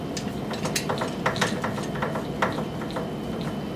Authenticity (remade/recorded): recorded